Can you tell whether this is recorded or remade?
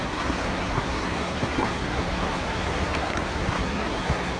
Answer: remade